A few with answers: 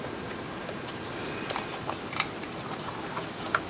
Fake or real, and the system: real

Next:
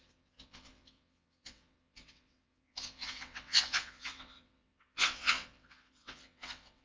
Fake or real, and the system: fake, vocoder, WaveNeXt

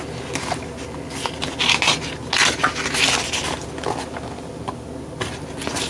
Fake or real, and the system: real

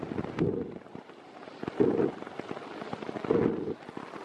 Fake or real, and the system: real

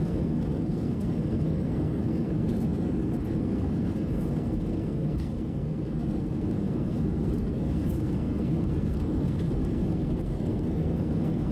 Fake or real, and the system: fake, codec, SNAC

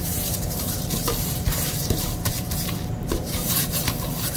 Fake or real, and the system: fake, vocoder, BigVGAN v2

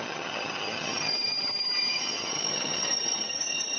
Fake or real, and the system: fake, vocoder, HiFi-GAN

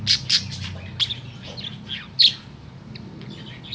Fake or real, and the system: real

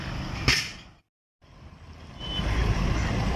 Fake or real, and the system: real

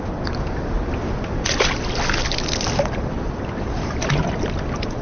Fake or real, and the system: real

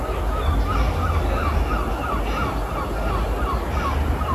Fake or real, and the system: real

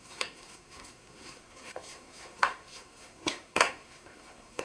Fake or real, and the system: fake, codec, SNAC